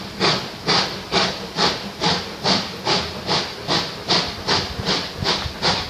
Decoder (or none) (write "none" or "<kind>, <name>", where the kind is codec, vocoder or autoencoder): none